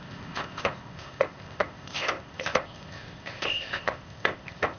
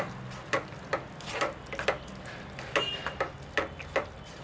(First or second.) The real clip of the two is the second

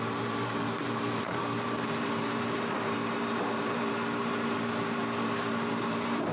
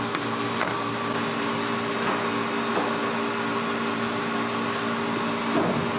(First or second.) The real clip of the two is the second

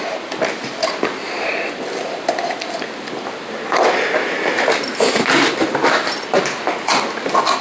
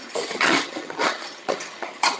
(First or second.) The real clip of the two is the first